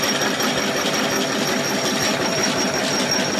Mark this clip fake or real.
real